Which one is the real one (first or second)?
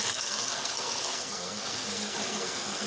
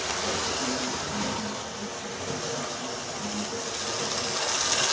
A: second